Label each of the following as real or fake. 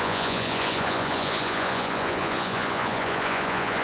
fake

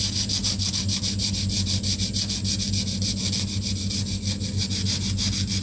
real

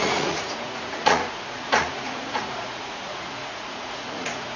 fake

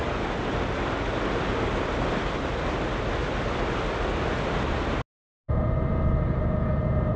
real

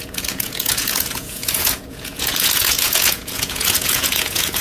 fake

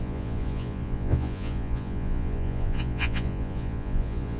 fake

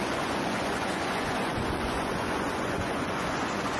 fake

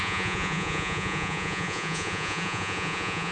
fake